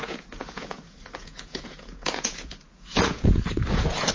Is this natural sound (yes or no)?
no